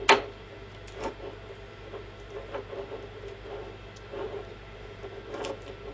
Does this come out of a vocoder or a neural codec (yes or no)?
no